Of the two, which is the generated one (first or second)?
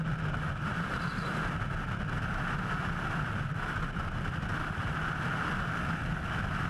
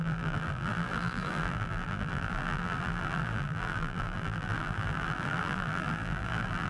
second